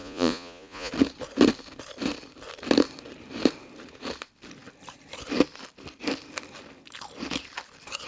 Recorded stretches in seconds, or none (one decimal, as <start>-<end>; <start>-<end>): 0.9-8.1